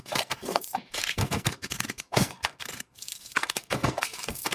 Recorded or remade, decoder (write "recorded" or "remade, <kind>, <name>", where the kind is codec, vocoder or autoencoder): remade, codec, SNAC